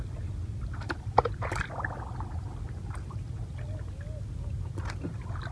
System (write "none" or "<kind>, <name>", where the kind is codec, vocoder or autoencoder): none